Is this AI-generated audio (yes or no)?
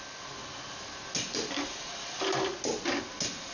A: no